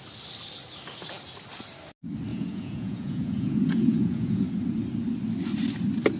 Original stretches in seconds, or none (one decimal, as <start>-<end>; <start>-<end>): 0.0-2.3; 4.5-6.2